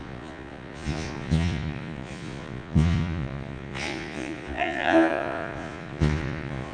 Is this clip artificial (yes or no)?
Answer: yes